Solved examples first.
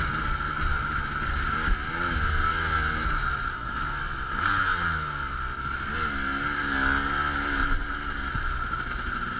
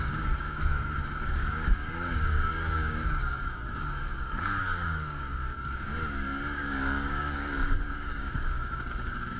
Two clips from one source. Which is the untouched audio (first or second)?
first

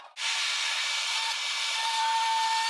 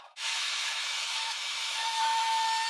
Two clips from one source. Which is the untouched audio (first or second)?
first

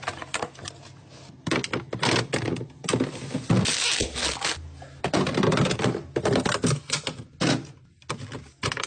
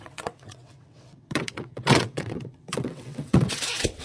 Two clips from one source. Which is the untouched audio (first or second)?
first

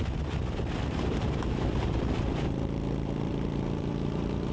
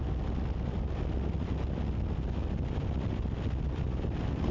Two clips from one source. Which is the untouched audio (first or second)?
second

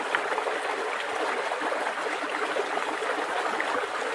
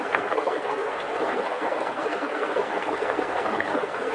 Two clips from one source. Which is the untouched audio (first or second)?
first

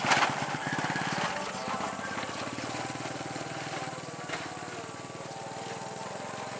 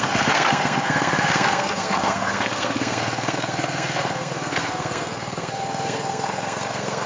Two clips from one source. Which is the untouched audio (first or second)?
first